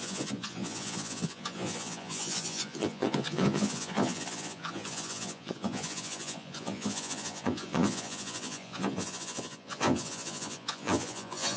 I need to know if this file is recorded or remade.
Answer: remade